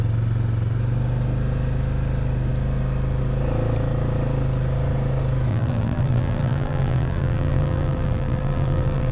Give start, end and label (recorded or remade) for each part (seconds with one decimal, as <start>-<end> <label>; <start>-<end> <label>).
0.0-5.5 recorded; 5.5-9.1 remade